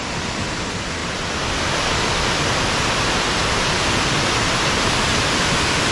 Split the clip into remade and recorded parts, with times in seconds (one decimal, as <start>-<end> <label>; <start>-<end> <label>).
0.0-5.9 recorded